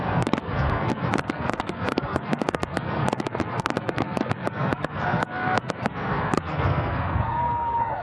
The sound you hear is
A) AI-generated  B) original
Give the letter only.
A